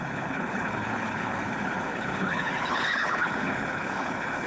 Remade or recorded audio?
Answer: remade